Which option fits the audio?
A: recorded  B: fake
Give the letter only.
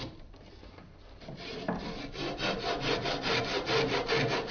A